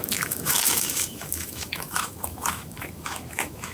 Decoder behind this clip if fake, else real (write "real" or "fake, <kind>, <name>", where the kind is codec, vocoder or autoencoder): fake, autoencoder, DAC-VAE